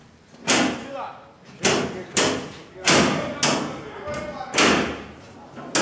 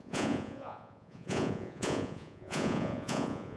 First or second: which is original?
first